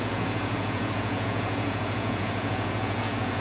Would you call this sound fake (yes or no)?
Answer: yes